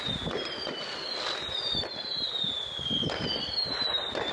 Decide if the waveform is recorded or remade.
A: recorded